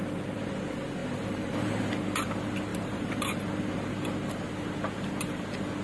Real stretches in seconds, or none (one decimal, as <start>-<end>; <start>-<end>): 0.0-1.0; 1.9-2.7; 3.4-5.8